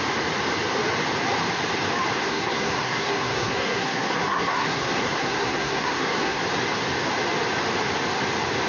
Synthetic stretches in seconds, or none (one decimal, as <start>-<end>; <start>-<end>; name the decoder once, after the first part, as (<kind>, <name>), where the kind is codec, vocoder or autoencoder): 2.3-6.4 (codec, SNAC)